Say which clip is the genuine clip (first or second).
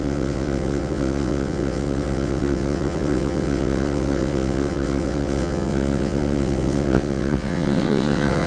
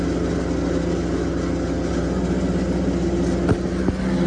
second